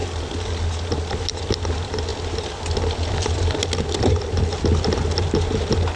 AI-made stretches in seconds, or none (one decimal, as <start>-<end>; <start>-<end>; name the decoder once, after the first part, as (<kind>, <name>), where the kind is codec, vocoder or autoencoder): none